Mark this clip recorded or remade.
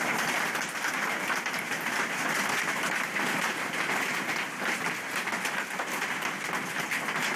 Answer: recorded